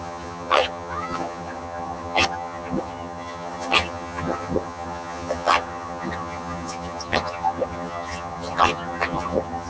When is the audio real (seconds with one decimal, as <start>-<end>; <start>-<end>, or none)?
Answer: none

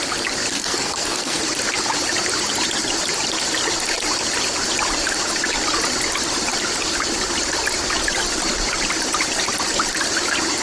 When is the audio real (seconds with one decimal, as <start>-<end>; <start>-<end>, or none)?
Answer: 0.0-0.5; 1.4-10.6

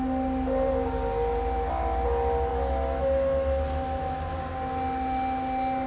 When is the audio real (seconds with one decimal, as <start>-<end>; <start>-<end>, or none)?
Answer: 0.0-2.5; 4.3-5.9

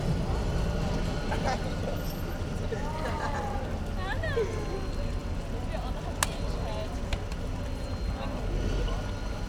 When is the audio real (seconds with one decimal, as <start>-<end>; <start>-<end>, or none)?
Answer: 0.0-9.5